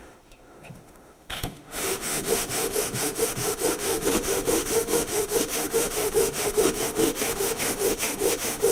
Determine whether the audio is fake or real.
fake